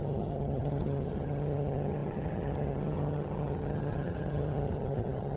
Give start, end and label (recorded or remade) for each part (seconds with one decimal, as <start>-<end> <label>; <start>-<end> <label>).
0.0-5.4 remade